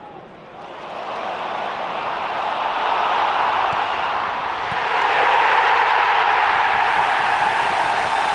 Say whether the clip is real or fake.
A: real